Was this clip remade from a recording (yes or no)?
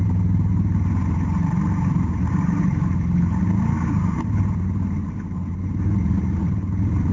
yes